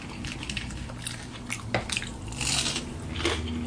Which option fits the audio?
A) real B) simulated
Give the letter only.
A